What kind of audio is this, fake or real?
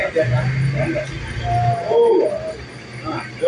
real